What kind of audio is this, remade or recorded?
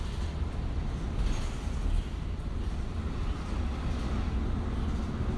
recorded